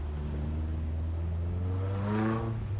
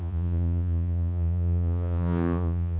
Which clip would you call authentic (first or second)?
first